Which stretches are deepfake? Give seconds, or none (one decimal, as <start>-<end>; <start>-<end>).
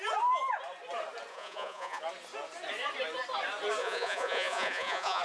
1.3-2.0; 3.8-5.2